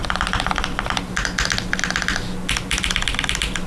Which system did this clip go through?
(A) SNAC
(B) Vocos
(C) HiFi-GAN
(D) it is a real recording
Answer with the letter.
D